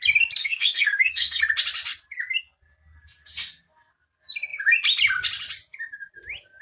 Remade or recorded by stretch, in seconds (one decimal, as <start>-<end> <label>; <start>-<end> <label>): 0.0-0.4 recorded; 0.4-1.4 remade; 1.4-6.6 recorded